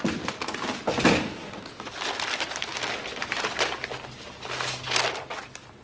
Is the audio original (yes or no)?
yes